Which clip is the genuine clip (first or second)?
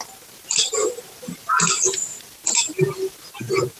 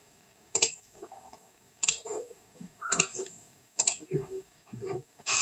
first